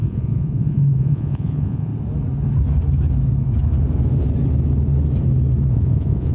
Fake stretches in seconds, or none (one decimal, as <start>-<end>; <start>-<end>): 0.0-1.9; 5.7-6.3